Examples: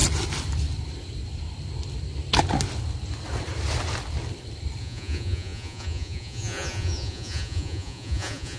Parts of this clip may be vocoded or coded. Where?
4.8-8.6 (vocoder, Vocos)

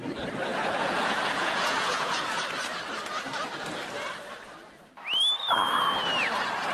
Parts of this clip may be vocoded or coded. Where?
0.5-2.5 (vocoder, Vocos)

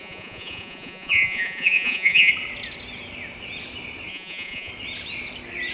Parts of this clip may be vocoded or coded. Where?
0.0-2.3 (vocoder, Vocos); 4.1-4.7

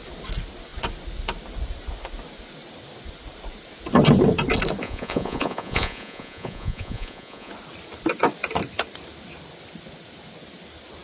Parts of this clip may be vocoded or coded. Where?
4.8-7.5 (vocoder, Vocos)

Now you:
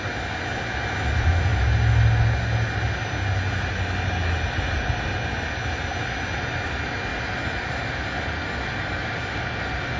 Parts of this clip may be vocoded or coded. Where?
none

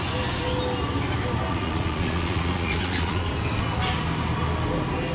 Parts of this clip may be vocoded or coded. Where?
1.5-3.3 (vocoder, Vocos)

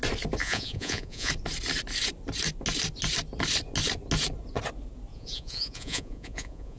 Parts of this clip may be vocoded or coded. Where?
0.4-1.3 (vocoder, Vocos); 5.1-6.8